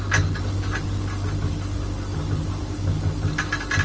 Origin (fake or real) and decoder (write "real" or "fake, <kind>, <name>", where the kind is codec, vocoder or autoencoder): real